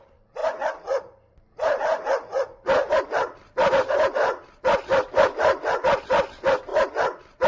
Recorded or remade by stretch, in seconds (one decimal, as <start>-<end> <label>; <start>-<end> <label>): 0.0-7.5 recorded